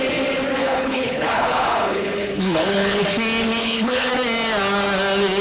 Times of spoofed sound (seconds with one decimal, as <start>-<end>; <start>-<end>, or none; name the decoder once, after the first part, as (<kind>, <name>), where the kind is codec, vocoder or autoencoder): 0.6-3.0 (codec, HILCodec); 3.6-4.1